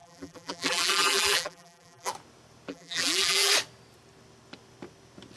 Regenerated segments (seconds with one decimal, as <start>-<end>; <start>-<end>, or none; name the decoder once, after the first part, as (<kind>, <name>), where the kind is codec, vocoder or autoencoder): 0.0-2.1 (vocoder, BigVGAN v2); 2.7-3.5